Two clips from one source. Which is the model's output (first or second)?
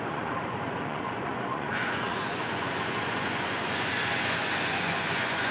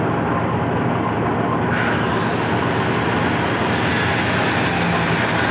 first